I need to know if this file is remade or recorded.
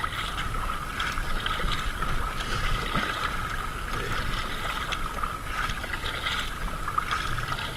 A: recorded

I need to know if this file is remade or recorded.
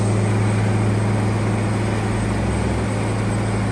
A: recorded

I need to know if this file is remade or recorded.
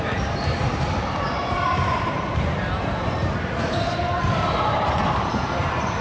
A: remade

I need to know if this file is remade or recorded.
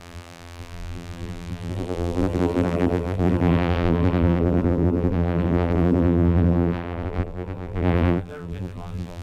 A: remade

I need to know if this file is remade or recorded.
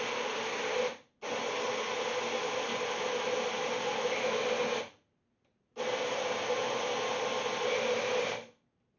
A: recorded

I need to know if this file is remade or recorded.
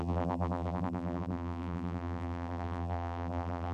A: remade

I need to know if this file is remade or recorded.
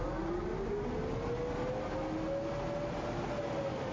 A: recorded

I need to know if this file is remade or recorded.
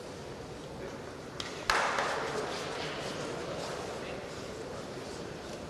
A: recorded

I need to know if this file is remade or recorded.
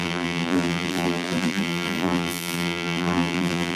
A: remade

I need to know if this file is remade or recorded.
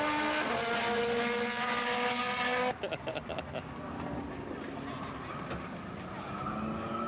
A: recorded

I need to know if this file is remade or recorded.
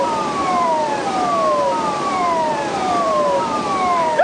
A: remade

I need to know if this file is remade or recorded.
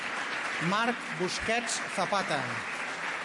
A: recorded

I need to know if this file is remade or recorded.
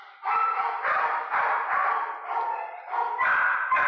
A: recorded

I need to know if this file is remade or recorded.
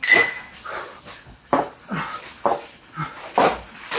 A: recorded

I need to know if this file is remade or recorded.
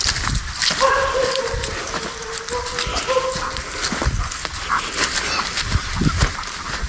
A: recorded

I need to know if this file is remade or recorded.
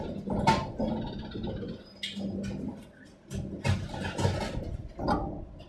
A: recorded